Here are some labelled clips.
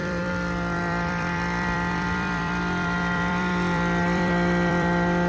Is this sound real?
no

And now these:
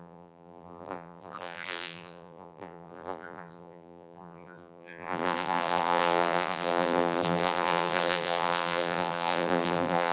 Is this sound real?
no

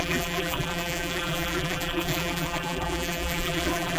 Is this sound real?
no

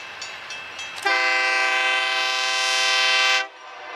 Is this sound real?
yes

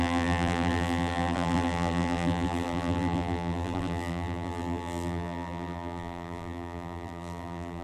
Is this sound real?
no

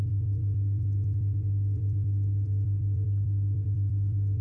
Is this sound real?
no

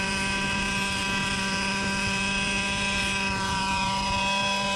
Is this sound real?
no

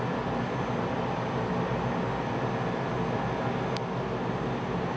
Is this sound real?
yes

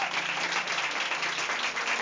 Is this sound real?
yes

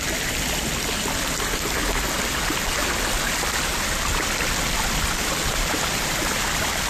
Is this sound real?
yes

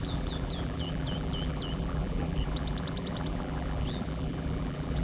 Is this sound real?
no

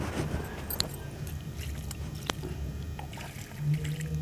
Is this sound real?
no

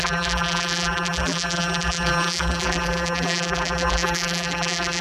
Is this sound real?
no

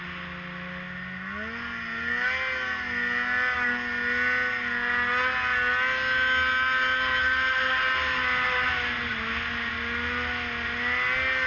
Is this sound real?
yes